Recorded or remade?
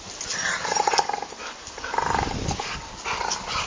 recorded